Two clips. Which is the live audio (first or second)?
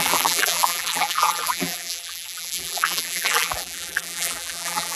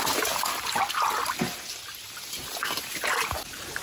second